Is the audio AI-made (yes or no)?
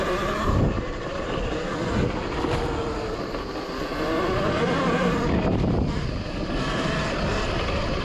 no